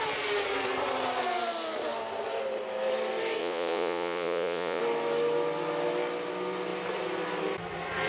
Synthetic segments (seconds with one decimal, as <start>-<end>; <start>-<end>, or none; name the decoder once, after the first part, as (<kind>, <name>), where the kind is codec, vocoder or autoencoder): 3.4-4.8 (vocoder, Vocos)